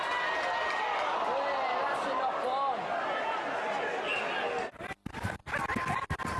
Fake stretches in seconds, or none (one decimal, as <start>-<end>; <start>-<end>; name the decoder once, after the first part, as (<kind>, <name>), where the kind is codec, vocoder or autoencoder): none